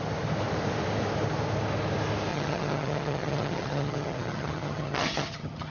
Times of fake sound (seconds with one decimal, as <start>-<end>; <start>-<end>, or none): 2.3-5.7